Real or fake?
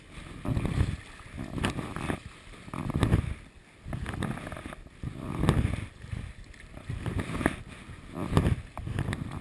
real